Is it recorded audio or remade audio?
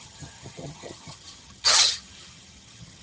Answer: remade